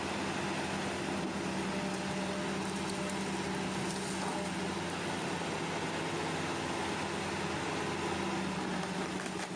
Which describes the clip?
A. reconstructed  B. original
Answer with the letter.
B